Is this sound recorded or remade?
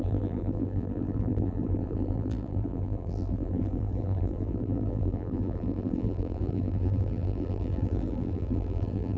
remade